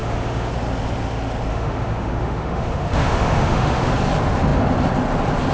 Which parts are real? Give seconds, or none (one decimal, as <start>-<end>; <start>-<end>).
0.5-1.5; 3.9-5.5